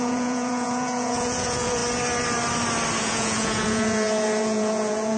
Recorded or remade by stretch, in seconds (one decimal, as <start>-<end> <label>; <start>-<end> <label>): 0.0-1.8 remade; 1.8-3.0 recorded; 3.0-5.2 remade